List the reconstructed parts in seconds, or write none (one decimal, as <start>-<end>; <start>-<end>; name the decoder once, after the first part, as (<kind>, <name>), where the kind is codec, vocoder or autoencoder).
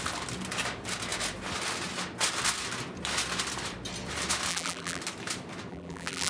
4.5-5.0 (vocoder, BigVGAN v2); 5.7-6.3